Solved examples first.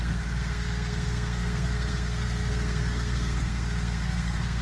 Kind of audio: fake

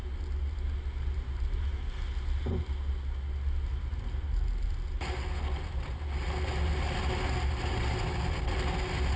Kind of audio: real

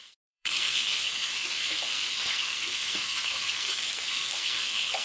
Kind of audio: fake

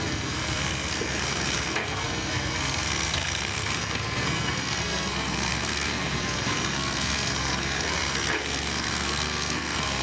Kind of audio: fake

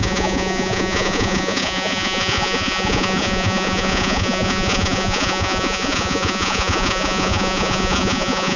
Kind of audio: fake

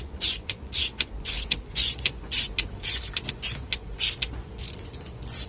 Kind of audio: fake